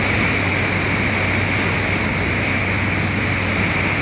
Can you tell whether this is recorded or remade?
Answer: recorded